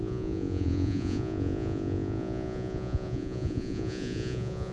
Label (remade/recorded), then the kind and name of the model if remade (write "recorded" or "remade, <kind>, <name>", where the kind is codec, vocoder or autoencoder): remade, vocoder, Vocos